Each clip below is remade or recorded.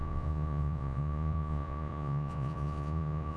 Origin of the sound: remade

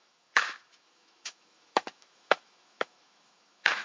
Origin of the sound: remade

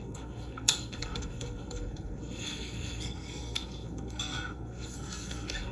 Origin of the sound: remade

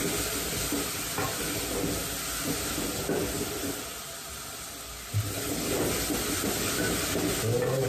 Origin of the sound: recorded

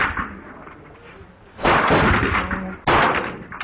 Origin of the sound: recorded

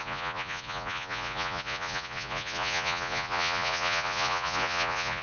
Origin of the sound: remade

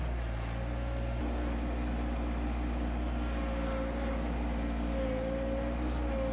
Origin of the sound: recorded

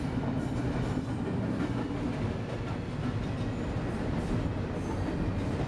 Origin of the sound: recorded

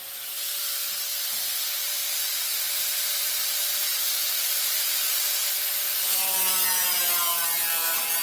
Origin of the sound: recorded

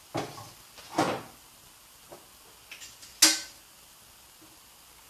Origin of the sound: recorded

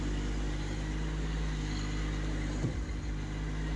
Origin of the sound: recorded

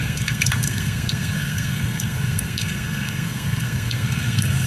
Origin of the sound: remade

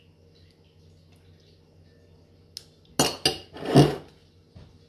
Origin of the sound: recorded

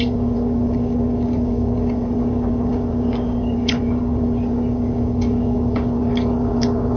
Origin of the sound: remade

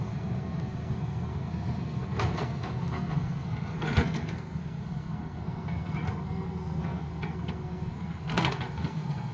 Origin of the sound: remade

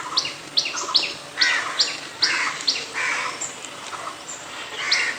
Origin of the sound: recorded